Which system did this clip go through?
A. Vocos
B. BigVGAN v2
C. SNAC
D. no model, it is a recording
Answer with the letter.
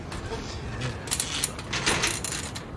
D